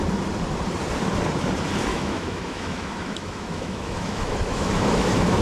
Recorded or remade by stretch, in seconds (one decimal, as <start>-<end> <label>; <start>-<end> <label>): 0.0-1.9 recorded; 1.9-5.4 remade